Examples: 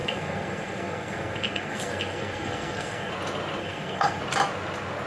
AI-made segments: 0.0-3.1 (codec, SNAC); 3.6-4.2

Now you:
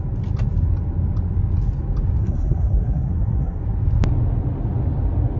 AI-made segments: 2.2-3.6 (codec, SNAC)